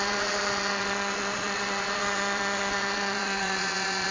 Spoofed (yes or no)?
yes